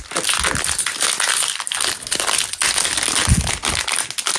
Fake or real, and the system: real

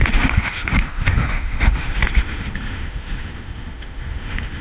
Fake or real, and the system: fake, autoencoder, DAC-VAE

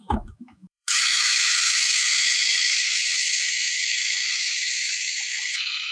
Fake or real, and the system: fake, autoencoder, DAC-VAE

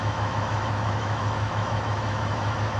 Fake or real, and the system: fake, autoencoder, DAC-VAE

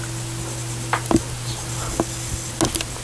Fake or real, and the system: real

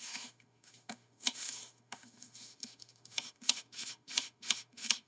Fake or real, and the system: fake, autoencoder, DAC-VAE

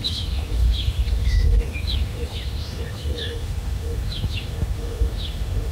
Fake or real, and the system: fake, autoencoder, DAC-VAE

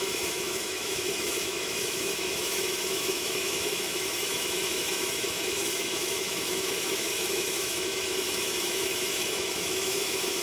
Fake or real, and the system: fake, autoencoder, DAC-VAE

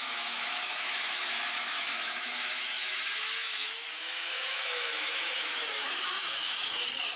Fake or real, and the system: fake, autoencoder, DAC-VAE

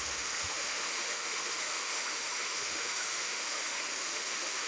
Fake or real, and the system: fake, autoencoder, DAC-VAE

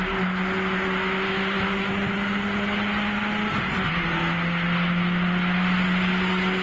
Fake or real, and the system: real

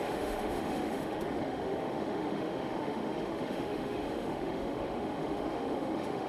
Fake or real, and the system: fake, autoencoder, DAC-VAE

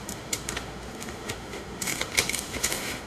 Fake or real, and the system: fake, autoencoder, DAC-VAE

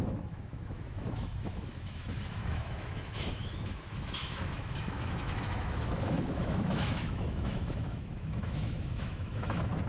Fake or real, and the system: fake, autoencoder, DAC-VAE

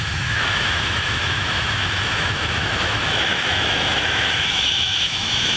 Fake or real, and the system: fake, autoencoder, DAC-VAE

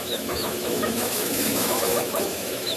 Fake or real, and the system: fake, autoencoder, DAC-VAE